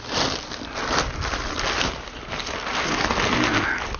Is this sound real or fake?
real